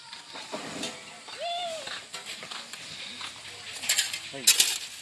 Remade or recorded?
recorded